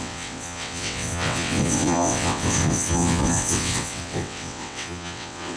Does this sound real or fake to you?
fake